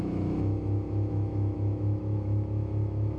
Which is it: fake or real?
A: fake